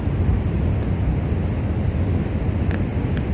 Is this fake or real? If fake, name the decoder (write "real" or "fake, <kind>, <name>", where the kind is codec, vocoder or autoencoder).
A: real